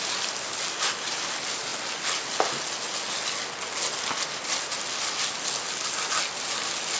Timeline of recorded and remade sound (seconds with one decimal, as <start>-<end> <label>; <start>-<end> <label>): 0.0-7.0 recorded